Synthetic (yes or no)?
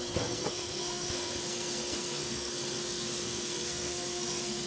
yes